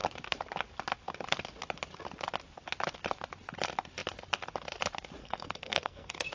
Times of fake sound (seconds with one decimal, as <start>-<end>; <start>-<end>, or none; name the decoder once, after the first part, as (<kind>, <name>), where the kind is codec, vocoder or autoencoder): 5.2-6.3 (codec, SNAC)